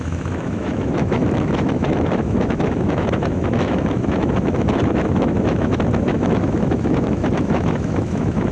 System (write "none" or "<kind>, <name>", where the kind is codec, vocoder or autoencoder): autoencoder, DAC-VAE